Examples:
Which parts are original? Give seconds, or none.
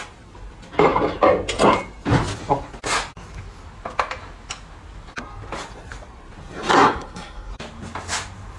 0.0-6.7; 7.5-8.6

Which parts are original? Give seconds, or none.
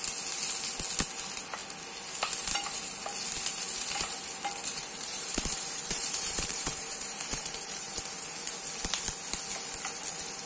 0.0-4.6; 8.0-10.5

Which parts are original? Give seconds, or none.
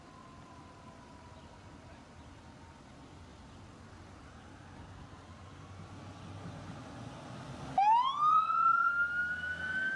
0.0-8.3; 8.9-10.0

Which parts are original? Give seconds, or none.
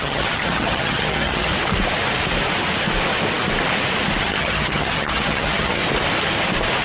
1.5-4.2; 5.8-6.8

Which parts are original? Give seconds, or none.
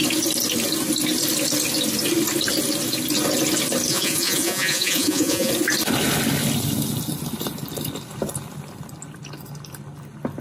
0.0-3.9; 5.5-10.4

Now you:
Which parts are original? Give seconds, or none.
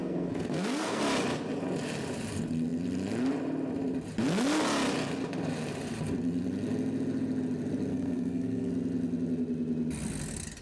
1.0-7.9; 8.7-10.6